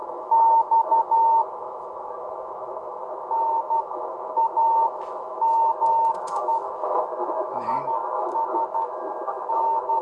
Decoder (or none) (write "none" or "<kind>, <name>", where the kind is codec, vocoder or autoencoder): autoencoder, DAC-VAE